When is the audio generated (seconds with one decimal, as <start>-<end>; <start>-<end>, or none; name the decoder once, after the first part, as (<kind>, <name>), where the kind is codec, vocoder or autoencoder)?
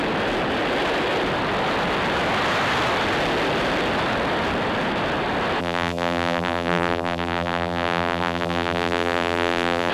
5.6-9.9 (vocoder, BigVGAN v2)